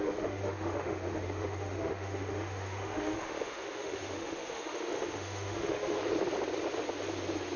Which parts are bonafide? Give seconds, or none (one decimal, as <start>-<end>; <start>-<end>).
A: 6.0-7.6